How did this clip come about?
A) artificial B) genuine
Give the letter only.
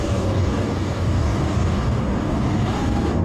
A